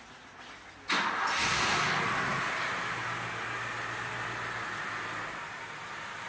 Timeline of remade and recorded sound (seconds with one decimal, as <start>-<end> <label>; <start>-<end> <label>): 0.0-6.3 recorded